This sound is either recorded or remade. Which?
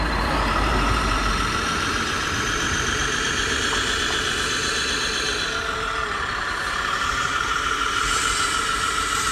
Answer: remade